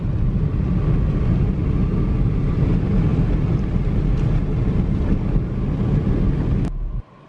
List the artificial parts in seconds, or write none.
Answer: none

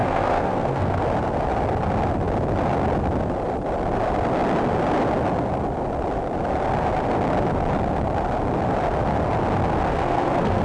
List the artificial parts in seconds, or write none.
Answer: 0.0-1.0 (codec, SNAC); 9.9-10.6

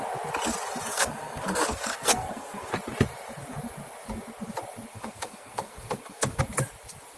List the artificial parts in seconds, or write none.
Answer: 0.9-2.7 (codec, SNAC); 4.9-6.4

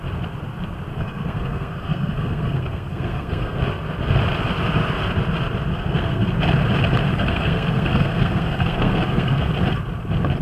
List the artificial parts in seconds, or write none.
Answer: 0.9-3.6 (codec, SNAC); 5.7-6.3; 7.0-9.5

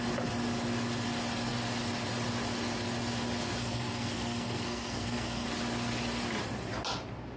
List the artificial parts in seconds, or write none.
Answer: 3.6-5.5 (codec, SNAC)

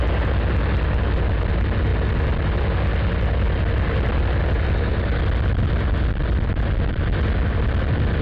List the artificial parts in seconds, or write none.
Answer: none

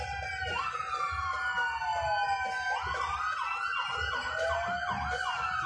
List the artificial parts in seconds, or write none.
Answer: none